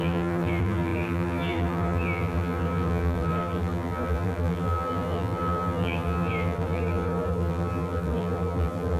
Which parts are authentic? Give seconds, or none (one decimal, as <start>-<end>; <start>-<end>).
none